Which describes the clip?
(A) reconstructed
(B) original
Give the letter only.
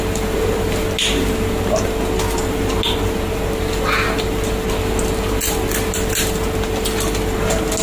B